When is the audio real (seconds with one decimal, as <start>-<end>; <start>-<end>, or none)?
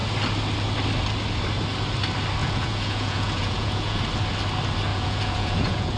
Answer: 0.0-2.4; 4.0-4.9